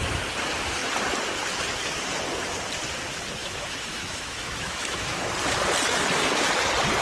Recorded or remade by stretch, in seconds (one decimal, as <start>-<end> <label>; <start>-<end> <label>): 0.0-3.4 recorded; 3.4-5.3 remade; 5.3-7.0 recorded